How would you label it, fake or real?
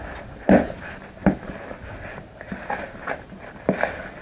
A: real